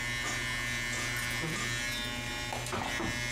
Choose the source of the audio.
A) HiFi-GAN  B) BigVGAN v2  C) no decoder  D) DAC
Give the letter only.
C